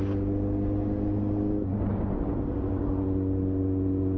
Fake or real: real